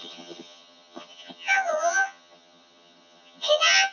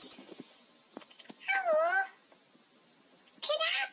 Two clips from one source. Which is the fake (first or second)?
first